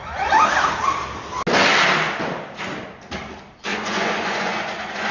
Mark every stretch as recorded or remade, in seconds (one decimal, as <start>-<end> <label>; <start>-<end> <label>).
0.0-3.7 recorded; 3.7-5.1 remade